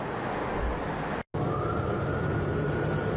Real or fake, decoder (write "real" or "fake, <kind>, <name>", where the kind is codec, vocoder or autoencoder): real